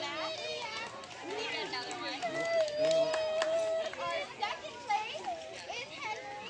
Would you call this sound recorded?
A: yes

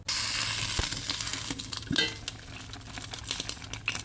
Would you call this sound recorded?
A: yes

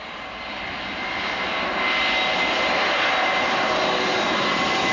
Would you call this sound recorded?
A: yes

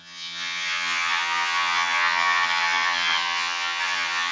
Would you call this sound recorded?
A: no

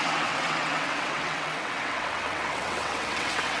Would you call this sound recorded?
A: no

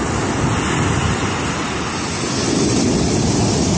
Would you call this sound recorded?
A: yes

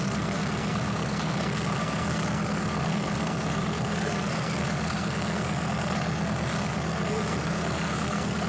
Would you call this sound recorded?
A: no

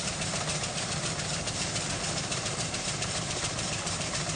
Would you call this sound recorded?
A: no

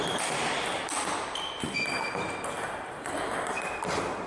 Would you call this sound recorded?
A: no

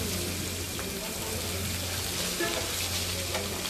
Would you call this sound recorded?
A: yes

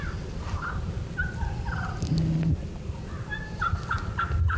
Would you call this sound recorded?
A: yes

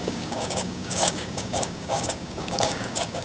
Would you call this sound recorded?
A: no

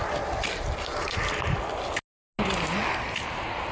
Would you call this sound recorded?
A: yes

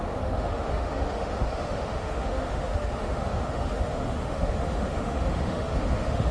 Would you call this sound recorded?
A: no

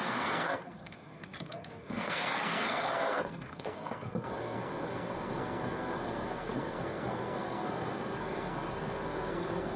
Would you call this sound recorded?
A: no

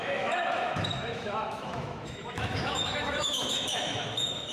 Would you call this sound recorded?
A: no